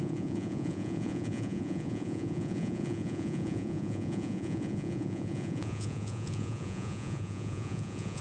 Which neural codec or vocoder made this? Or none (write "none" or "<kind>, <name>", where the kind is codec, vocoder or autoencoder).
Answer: vocoder, Vocos